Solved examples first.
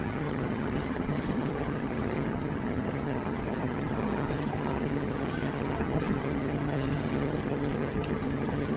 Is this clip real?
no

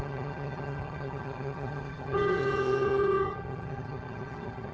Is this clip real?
no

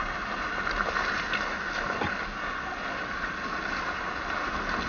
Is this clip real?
yes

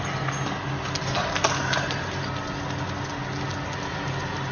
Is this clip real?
yes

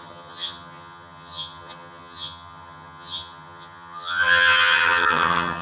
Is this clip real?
no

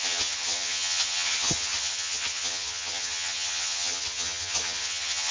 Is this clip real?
no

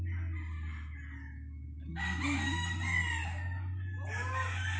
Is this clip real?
yes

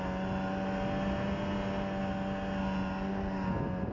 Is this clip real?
yes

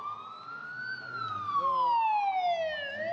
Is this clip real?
yes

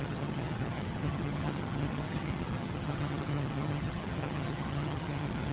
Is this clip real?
no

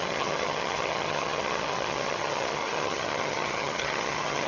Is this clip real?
no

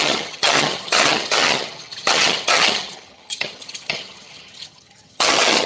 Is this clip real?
no